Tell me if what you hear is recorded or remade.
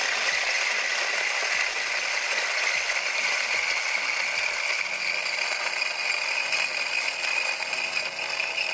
recorded